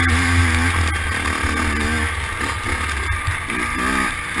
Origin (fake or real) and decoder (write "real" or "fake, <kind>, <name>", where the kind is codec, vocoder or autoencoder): real